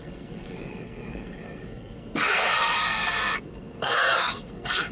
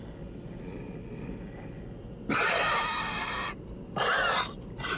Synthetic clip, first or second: first